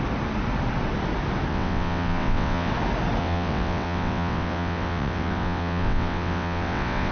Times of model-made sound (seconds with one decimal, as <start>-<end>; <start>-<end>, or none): 1.5-2.7; 3.2-7.1